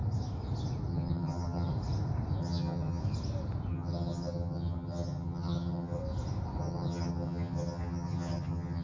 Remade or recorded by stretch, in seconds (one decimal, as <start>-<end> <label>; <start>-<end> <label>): 0.0-0.9 recorded; 0.9-1.7 remade; 1.7-2.4 recorded; 2.4-3.0 remade; 3.0-3.7 recorded; 3.7-6.0 remade; 6.0-6.6 recorded; 6.6-8.8 remade